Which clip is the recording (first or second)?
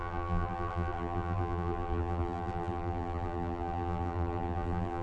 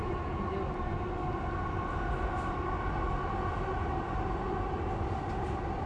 second